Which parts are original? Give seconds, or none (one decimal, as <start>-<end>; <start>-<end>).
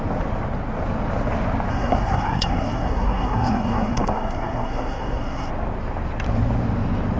0.0-1.7; 5.5-7.2